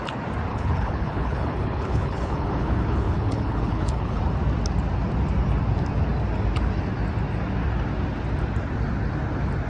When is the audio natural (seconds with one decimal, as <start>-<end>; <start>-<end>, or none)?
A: 0.0-0.5; 4.2-9.7